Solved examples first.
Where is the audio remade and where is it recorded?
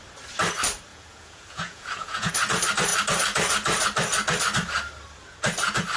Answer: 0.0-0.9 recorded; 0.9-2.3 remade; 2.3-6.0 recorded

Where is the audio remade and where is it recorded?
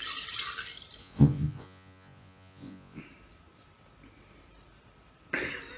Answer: 0.0-1.0 recorded; 1.0-3.0 remade; 3.0-5.8 recorded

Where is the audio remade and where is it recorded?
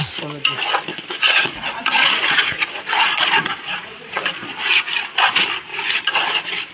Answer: 0.0-0.9 recorded; 0.9-4.2 remade; 4.2-5.7 recorded; 5.7-6.7 remade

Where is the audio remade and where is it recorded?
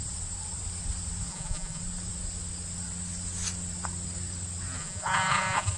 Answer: 0.0-1.3 recorded; 1.3-1.8 remade; 1.8-4.8 recorded; 4.8-5.8 remade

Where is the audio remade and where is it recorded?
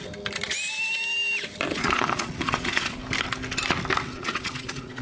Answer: 0.0-1.7 recorded; 1.7-3.0 remade; 3.0-4.1 recorded; 4.1-5.0 remade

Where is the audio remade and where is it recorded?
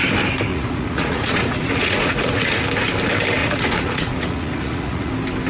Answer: 0.0-0.5 recorded; 0.5-2.7 remade; 2.7-3.4 recorded; 3.4-5.1 remade; 5.1-5.5 recorded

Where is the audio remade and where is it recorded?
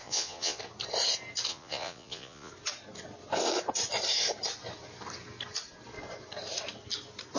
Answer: 0.0-0.6 remade; 0.6-1.5 recorded; 1.5-2.5 remade; 2.5-7.4 recorded